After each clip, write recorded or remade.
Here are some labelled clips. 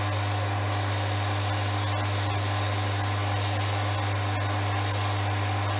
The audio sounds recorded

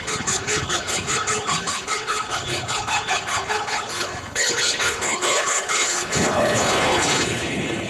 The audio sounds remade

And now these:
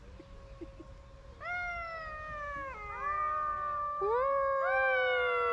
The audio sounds recorded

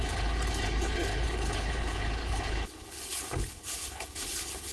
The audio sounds remade